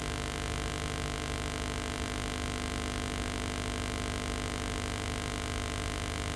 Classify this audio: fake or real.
real